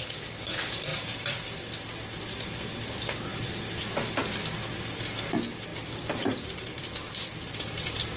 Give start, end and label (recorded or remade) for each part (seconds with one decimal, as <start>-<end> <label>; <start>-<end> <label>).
0.0-0.9 recorded; 0.9-1.6 remade; 1.6-5.7 recorded; 5.7-7.7 remade; 7.7-8.2 recorded